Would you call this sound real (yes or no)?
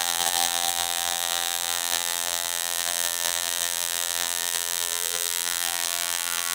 no